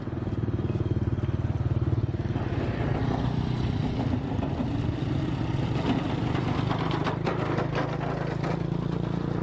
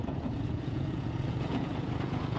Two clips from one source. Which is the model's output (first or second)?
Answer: second